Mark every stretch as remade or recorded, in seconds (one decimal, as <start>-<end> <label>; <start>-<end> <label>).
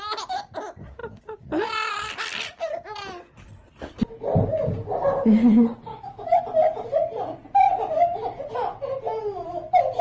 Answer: 0.0-5.9 recorded; 5.9-6.4 remade; 6.4-10.0 recorded